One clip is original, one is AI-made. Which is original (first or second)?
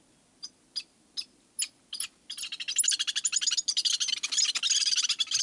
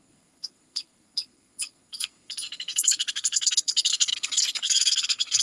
first